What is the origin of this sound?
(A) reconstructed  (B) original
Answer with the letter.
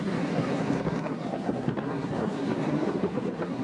A